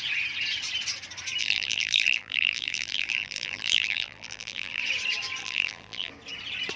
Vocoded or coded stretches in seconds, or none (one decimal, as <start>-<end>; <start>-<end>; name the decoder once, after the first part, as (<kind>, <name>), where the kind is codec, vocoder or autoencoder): 1.4-4.8 (vocoder, BigVGAN v2); 5.4-6.1